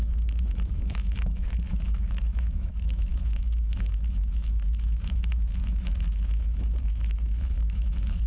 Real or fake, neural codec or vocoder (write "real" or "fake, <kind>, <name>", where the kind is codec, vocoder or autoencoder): fake, autoencoder, DAC-VAE